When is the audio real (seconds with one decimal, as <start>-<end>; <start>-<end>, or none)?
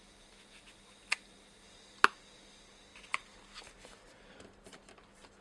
0.0-5.4